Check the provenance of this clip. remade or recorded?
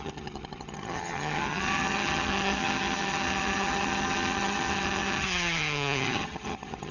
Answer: remade